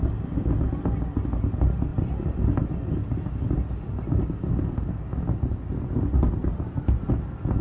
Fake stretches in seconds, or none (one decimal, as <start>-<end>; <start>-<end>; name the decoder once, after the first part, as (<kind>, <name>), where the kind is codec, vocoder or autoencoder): 6.4-7.0 (vocoder, BigVGAN v2)